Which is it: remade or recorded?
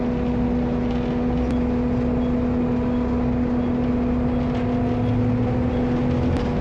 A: recorded